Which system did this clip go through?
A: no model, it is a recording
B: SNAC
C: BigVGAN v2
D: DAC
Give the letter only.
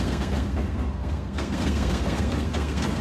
B